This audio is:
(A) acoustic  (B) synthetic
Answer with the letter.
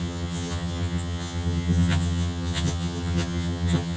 B